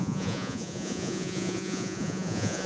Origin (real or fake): fake